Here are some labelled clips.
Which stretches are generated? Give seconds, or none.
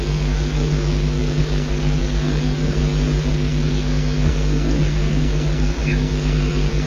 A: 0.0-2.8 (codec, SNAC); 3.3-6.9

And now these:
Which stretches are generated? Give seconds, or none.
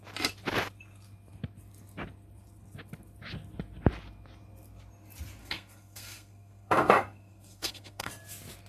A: 5.4-8.1 (codec, SNAC)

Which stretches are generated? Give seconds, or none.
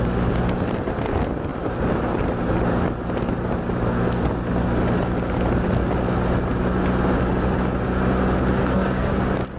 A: 8.6-9.1 (codec, SNAC)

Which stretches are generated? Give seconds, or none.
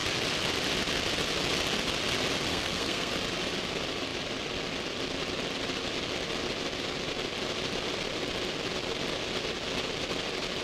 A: 2.5-3.1 (codec, SNAC)